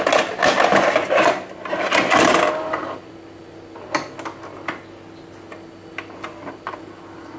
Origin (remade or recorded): recorded